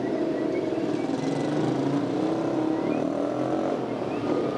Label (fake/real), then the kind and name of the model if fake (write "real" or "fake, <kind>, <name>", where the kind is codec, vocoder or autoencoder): real